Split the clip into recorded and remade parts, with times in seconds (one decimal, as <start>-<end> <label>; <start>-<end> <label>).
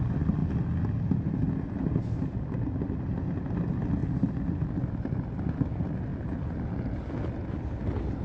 0.0-8.2 recorded